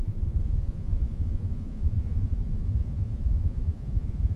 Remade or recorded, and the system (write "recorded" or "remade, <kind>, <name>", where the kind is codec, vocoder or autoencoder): remade, vocoder, Vocos